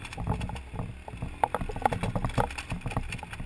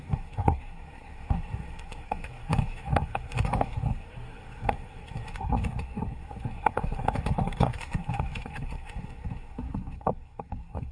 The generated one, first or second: second